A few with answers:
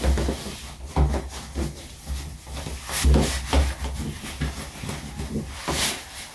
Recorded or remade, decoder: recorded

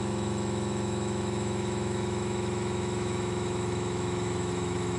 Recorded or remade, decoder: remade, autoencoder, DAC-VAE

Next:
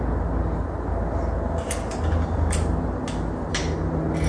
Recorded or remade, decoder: recorded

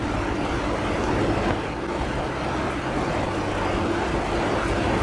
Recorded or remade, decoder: recorded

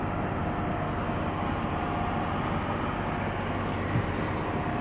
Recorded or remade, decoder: recorded